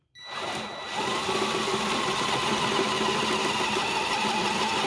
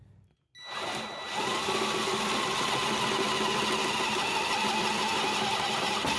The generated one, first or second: first